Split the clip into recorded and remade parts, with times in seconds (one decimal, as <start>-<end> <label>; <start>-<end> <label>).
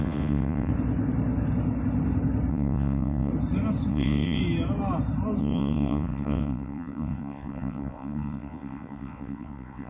0.0-0.7 remade; 0.7-2.5 recorded; 2.5-3.3 remade; 3.3-3.9 recorded; 3.9-4.4 remade; 4.4-5.4 recorded; 5.4-9.9 remade